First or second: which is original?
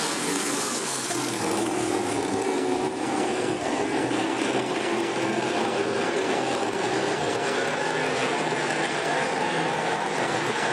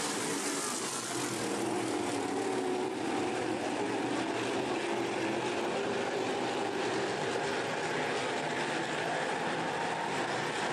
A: second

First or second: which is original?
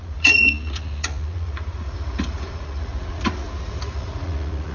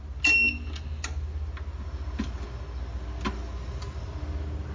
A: second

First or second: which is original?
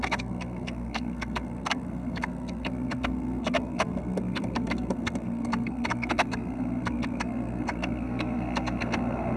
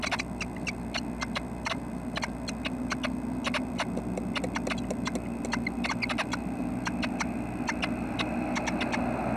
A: second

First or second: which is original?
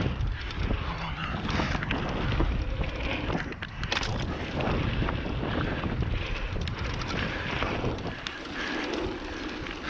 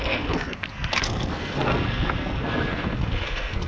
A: first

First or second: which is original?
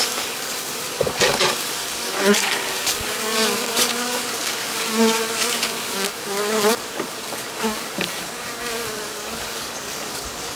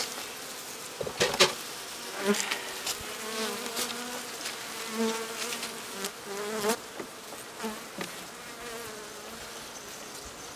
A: second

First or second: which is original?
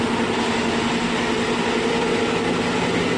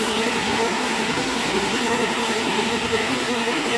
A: first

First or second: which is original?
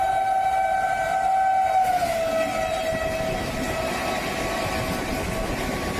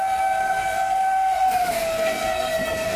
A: first